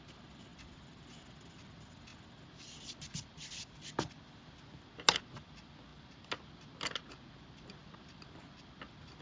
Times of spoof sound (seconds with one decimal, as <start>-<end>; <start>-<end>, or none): none